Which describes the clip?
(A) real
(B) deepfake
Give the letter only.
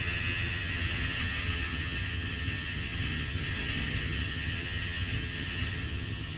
B